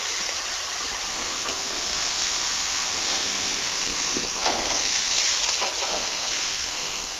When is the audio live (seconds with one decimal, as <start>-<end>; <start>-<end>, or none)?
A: 0.0-1.1; 5.2-5.9